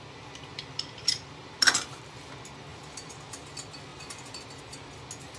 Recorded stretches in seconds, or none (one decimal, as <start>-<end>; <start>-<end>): 0.0-0.5; 2.3-3.9; 4.6-5.4